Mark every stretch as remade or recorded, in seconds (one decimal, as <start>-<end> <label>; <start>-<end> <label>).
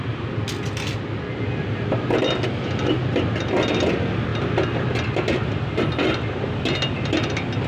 0.0-7.7 recorded